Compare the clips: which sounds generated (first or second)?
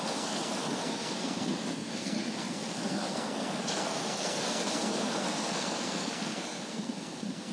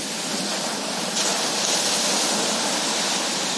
first